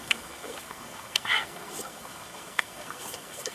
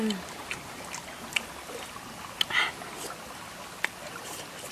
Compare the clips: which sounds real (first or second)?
second